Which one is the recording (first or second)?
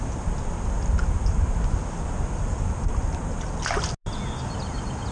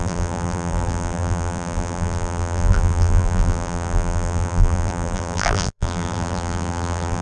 first